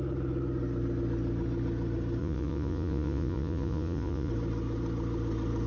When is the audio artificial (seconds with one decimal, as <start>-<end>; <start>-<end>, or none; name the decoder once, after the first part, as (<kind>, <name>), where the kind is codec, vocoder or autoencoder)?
2.2-4.3 (vocoder, Vocos)